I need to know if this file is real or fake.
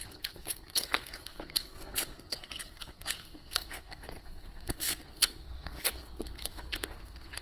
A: fake